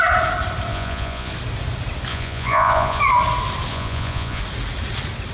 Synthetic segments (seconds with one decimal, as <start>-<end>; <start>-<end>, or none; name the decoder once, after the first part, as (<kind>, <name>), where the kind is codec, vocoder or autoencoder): 0.7-1.3 (vocoder, Vocos); 2.1-3.0; 3.7-4.4